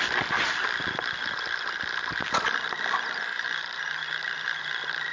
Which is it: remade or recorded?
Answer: recorded